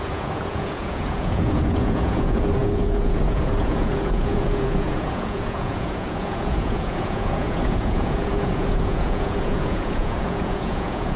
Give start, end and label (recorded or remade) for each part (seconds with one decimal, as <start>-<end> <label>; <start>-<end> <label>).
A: 0.0-11.2 remade